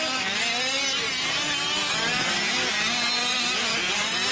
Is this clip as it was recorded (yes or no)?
yes